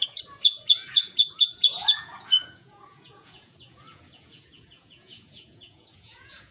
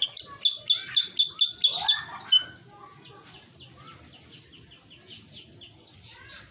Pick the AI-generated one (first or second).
first